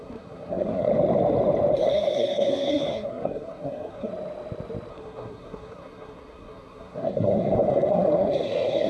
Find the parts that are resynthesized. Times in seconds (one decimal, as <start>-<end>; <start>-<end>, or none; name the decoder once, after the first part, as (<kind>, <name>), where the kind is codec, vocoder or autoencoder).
0.0-0.9 (codec, SNAC); 1.7-4.1; 4.9-8.9